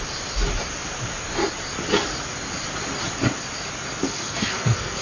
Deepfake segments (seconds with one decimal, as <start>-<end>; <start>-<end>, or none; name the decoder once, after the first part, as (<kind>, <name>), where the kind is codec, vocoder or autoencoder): 4.0-5.0 (codec, SNAC)